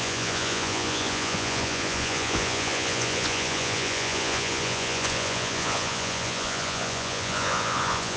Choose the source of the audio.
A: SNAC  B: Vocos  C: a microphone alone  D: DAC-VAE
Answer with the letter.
B